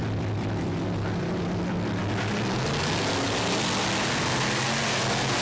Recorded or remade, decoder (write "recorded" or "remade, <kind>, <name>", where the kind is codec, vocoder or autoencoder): recorded